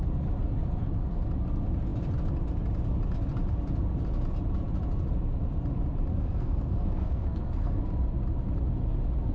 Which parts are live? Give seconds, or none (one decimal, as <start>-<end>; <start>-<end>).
0.0-6.1; 7.8-9.3